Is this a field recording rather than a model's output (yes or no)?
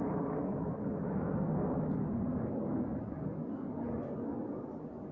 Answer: yes